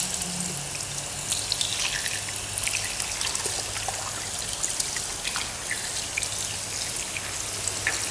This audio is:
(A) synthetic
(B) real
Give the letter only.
B